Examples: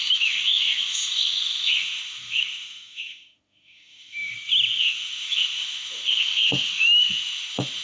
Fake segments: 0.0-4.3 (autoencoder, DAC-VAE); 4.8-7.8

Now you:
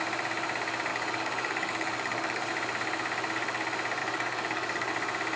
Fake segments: 0.9-2.5 (codec, DAC); 4.0-4.9